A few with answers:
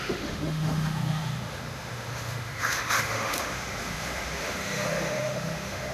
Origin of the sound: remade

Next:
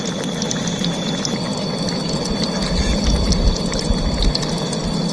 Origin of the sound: recorded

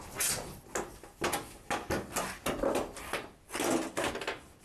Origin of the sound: recorded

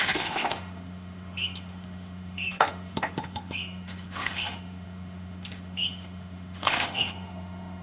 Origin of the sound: remade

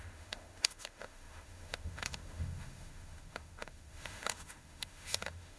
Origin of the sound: remade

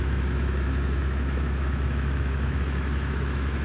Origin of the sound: remade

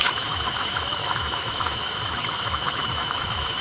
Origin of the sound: remade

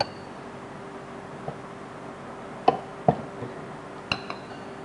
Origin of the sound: recorded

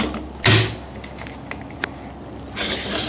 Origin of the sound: recorded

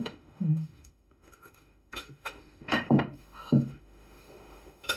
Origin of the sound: remade